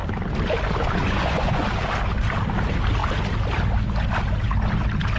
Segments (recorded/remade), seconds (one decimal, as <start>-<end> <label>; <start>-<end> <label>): 0.0-1.0 recorded; 1.0-1.6 remade; 1.6-5.2 recorded